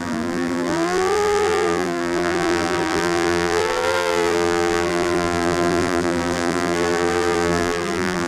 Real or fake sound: fake